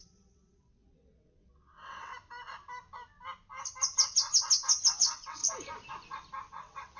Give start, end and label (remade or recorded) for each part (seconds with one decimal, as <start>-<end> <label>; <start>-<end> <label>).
0.0-2.1 remade; 2.1-4.9 recorded; 4.9-5.4 remade; 5.4-6.5 recorded; 6.5-7.0 remade